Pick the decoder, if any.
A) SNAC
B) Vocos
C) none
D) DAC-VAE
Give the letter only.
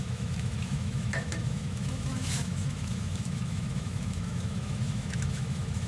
D